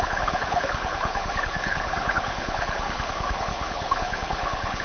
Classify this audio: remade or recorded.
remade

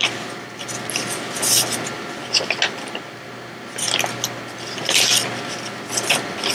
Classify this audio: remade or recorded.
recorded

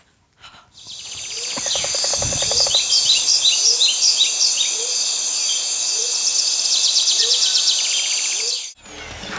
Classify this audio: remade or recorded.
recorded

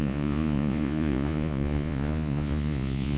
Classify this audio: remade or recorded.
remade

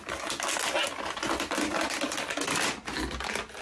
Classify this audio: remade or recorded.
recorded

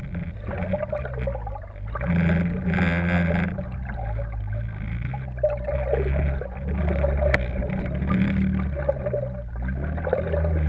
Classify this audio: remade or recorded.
recorded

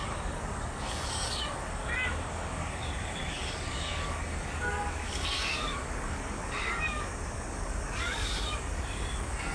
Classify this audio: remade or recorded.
remade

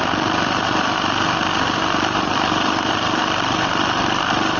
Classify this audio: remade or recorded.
recorded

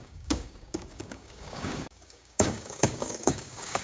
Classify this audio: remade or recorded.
remade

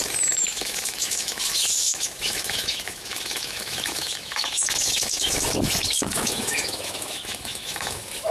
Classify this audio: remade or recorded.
remade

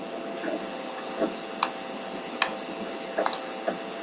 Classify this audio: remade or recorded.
recorded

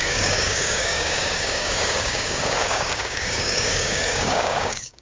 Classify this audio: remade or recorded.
remade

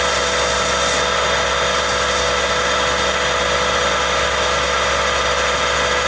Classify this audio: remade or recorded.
recorded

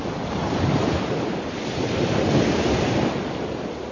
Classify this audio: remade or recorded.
recorded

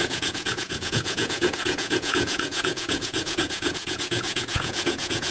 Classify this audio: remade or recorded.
remade